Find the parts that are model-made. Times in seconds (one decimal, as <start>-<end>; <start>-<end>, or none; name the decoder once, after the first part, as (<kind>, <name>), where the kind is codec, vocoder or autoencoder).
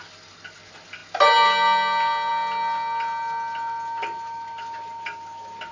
none